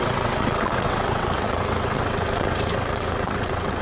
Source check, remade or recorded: remade